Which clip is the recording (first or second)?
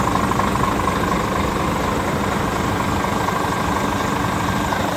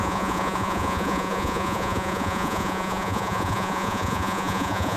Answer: first